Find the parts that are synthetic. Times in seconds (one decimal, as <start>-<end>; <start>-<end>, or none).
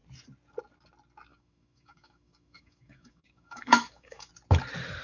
1.3-4.3